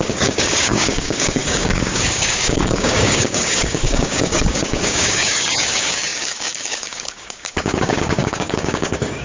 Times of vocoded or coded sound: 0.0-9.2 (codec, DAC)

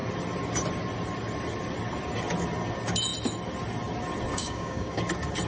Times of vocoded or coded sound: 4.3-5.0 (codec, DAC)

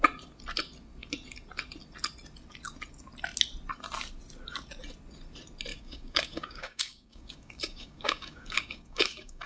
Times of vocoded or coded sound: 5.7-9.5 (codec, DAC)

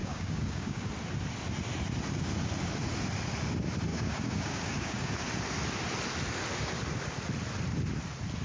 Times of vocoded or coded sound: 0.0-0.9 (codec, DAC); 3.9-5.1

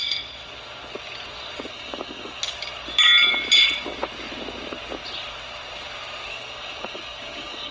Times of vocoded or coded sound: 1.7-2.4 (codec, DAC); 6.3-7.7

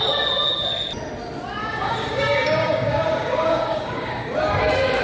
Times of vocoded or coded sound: 1.6-4.6 (codec, DAC)